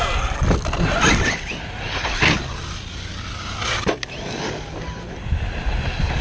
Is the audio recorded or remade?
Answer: recorded